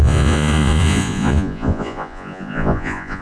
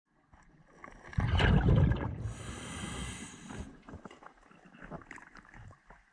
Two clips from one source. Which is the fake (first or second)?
first